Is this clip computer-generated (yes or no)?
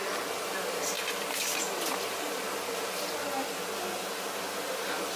no